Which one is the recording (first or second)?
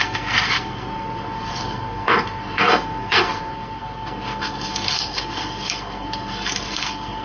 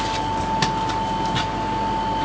second